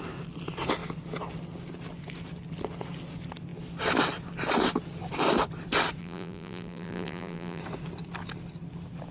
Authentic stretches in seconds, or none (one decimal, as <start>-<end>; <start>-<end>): 0.0-6.0; 7.6-9.1